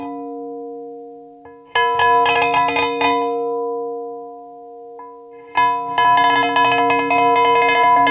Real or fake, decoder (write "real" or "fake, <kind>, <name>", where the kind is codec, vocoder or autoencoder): real